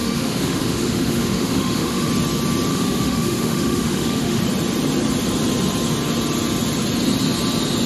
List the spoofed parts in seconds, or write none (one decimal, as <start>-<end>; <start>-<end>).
0.0-2.1; 2.7-4.4